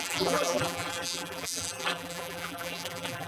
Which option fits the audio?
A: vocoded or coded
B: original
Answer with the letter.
A